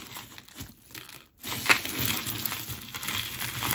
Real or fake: real